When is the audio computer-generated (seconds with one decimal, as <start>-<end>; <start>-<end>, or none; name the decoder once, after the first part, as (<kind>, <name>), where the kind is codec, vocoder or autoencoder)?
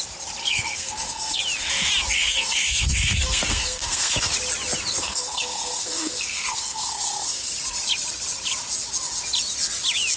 0.4-1.4 (codec, SNAC); 2.2-4.3; 4.9-7.5